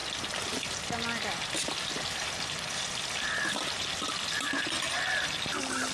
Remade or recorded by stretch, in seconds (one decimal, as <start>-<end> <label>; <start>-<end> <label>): 0.0-5.9 recorded